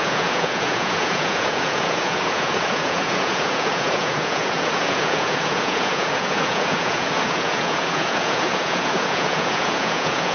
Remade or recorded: remade